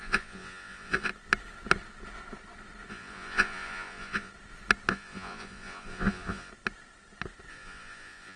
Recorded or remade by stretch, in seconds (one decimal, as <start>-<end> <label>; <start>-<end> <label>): 0.0-1.1 remade; 1.1-2.9 recorded; 2.9-4.3 remade; 4.3-4.9 recorded; 4.9-6.5 remade; 6.5-7.5 recorded; 7.5-8.4 remade